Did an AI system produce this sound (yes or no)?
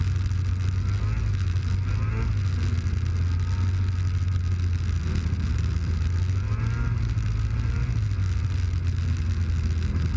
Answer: no